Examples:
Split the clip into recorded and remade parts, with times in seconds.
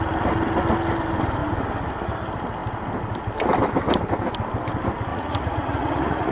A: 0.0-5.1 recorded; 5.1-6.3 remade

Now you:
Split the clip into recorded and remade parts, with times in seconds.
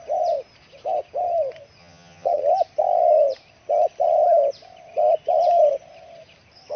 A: 0.0-1.8 recorded; 1.8-2.4 remade; 2.4-6.8 recorded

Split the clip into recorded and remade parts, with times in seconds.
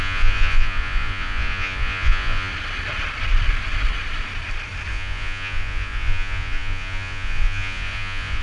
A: 0.0-2.5 remade; 2.5-4.9 recorded; 4.9-8.4 remade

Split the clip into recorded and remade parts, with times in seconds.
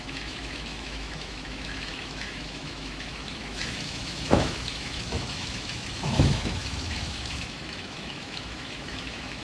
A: 0.0-9.4 remade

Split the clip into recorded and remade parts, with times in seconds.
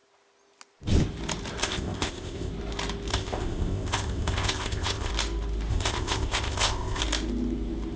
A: 0.0-1.6 recorded; 1.6-2.5 remade; 2.5-3.1 recorded; 3.1-5.1 remade; 5.1-5.7 recorded; 5.7-7.0 remade; 7.0-8.0 recorded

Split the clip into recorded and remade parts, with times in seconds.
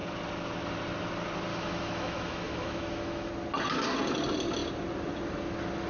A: 0.0-1.5 recorded; 1.5-3.3 remade; 3.3-5.9 recorded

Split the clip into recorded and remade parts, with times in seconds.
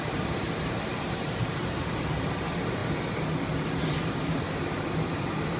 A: 0.0-2.8 remade; 2.8-4.1 recorded; 4.1-5.6 remade